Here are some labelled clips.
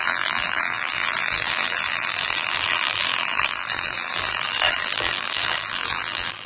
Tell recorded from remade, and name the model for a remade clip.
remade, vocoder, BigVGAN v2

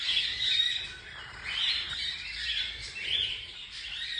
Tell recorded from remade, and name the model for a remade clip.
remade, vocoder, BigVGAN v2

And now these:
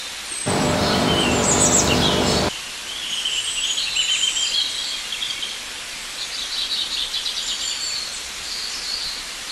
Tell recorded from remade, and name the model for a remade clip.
remade, vocoder, BigVGAN v2